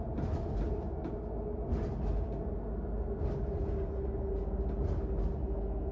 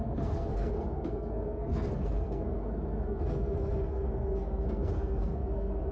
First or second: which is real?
first